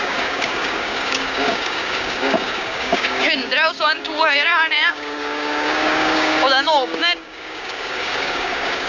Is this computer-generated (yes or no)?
yes